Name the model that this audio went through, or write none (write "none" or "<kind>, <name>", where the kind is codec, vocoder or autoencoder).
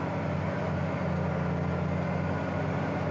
none